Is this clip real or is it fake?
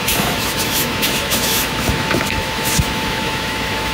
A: fake